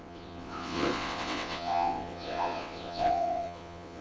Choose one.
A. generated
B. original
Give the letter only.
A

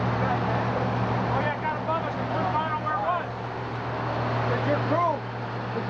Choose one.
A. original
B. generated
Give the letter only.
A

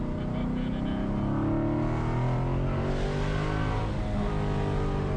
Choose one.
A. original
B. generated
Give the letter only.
A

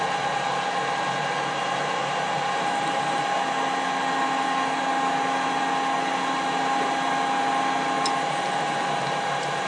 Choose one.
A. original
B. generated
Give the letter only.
A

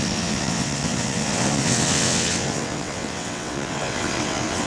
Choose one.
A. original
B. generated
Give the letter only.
B